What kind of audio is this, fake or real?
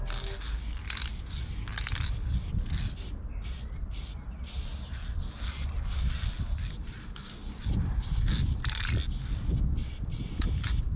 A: real